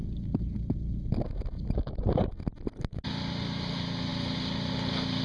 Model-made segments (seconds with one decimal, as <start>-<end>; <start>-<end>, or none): none